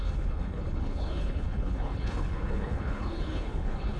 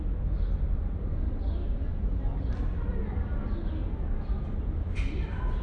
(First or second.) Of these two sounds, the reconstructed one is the first